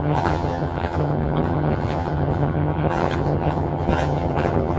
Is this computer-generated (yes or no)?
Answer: yes